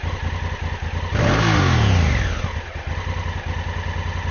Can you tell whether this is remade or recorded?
recorded